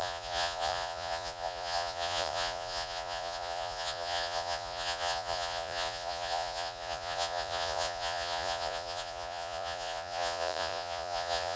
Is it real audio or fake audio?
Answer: fake